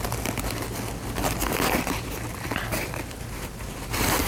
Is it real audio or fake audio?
fake